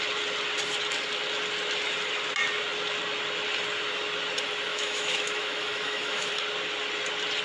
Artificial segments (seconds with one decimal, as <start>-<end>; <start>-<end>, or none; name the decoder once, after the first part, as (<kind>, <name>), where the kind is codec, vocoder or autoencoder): 4.7-6.3 (autoencoder, DAC-VAE)